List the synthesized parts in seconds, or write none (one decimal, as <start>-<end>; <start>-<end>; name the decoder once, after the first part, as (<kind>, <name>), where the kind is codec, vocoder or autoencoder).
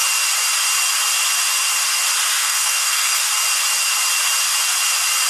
2.4-3.2 (codec, SNAC)